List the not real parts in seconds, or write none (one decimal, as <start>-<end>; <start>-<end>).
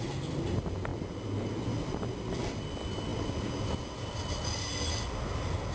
none